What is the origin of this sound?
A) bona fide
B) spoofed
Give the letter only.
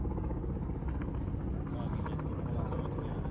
A